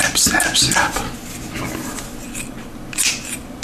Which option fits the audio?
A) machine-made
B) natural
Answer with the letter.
B